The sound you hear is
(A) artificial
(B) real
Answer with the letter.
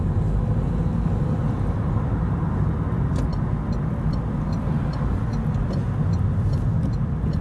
B